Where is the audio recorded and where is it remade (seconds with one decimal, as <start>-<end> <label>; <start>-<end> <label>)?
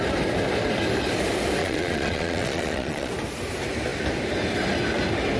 0.0-1.6 recorded; 1.6-3.1 remade; 3.1-5.4 recorded